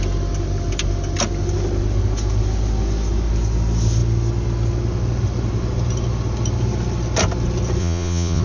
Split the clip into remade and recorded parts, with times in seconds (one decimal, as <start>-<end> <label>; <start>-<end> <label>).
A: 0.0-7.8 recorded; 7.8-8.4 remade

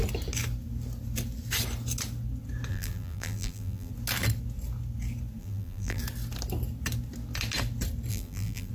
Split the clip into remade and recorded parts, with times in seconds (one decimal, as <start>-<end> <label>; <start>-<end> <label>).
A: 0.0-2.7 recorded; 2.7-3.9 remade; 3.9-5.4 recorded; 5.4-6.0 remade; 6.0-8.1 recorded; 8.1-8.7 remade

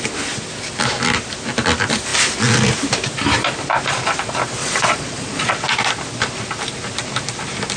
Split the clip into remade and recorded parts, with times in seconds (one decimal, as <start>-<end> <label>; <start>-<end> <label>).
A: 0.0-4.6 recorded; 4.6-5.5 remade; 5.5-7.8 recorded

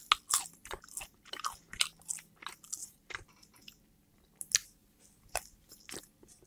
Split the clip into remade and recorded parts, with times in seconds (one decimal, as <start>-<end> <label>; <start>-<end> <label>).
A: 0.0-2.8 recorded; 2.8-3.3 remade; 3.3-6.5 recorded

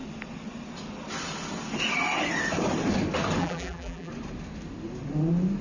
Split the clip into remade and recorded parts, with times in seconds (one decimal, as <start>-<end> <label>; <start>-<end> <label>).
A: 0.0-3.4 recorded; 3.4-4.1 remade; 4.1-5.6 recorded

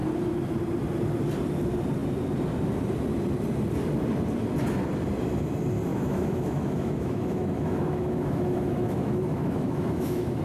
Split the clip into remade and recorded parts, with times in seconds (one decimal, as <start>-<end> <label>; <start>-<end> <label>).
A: 0.0-5.9 recorded; 5.9-10.4 remade